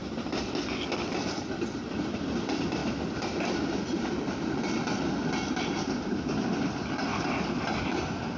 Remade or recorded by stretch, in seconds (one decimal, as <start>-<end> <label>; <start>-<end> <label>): 0.0-8.4 recorded